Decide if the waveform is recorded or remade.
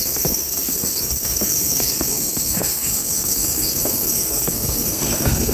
remade